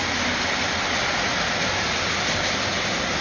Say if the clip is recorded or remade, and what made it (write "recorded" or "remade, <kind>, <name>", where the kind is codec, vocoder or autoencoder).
recorded